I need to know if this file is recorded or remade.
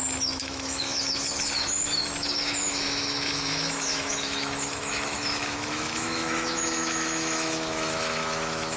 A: remade